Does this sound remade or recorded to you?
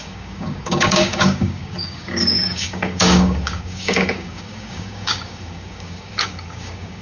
remade